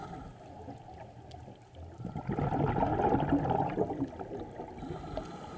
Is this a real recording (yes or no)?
yes